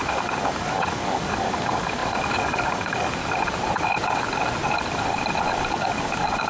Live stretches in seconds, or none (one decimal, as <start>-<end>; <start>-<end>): 3.2-5.7